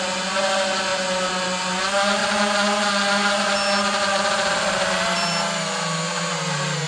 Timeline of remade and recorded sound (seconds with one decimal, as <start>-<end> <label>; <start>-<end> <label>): 0.0-6.9 recorded